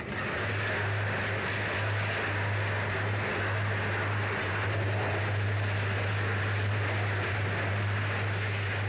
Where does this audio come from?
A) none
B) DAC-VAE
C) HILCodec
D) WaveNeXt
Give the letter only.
A